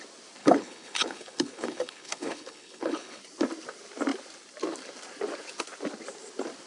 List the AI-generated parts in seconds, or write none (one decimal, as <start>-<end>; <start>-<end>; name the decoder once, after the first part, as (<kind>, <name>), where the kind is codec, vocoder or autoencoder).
0.4-3.2 (codec, HILCodec)